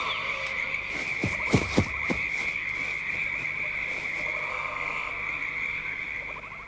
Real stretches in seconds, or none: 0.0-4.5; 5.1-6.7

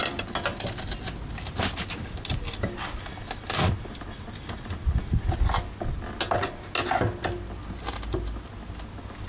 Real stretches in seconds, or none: 0.0-9.3

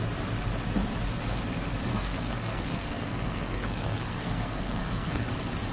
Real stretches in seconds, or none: 0.0-1.9; 5.3-5.7

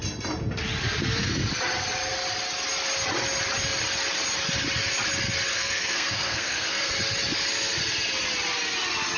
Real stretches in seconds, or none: 0.0-5.5; 6.9-9.2

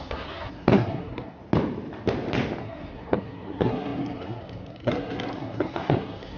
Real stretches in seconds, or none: 1.4-2.6

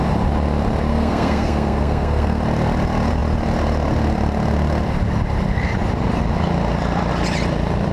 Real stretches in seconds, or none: 0.0-0.9; 2.4-7.9

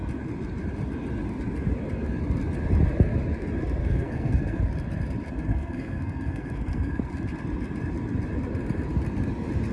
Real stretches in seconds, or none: 0.0-3.8; 4.6-5.5; 7.1-9.7